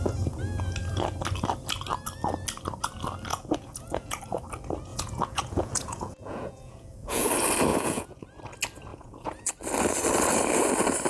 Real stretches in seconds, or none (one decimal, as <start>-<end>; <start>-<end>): 0.0-3.3; 4.2-4.9; 7.3-7.7; 8.4-8.9; 9.5-11.1